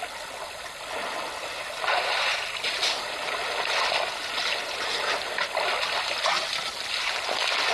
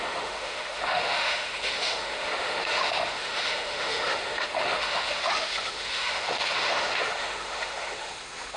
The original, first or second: first